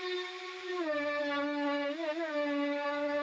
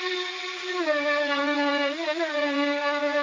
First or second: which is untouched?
first